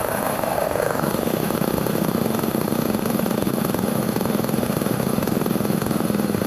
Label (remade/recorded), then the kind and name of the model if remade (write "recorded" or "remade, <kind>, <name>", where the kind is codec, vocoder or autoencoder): remade, autoencoder, DAC-VAE